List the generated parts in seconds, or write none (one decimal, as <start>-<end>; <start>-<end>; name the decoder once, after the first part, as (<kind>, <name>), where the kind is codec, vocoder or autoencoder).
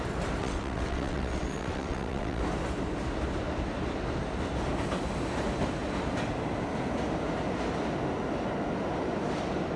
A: 0.4-2.4 (vocoder, WaveNeXt)